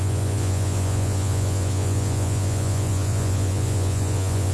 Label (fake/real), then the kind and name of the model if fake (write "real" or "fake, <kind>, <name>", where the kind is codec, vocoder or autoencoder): fake, vocoder, Vocos